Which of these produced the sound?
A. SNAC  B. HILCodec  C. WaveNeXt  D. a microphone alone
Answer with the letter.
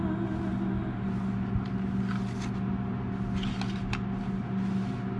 D